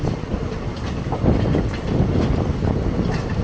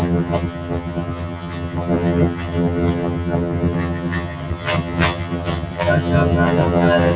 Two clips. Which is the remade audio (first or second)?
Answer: second